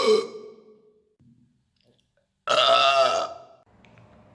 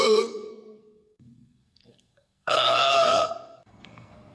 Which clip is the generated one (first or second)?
second